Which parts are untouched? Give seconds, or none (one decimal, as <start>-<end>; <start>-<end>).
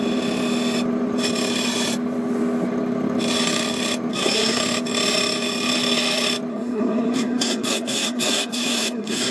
0.0-4.1; 4.6-6.5